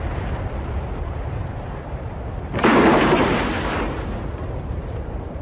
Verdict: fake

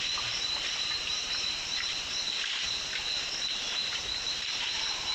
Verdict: fake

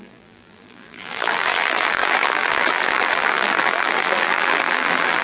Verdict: fake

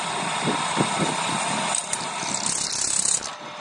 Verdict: real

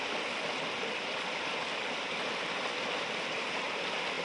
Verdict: real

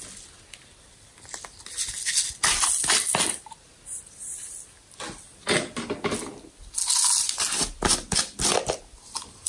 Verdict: real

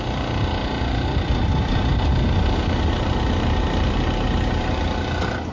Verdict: fake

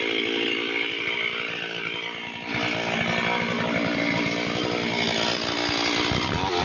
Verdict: real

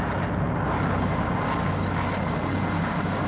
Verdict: real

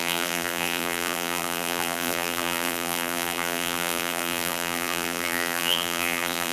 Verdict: fake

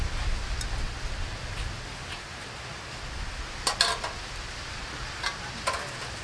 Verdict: real